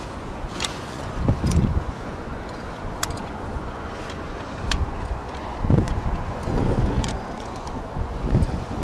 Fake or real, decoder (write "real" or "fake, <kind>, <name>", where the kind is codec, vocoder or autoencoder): fake, vocoder, Vocos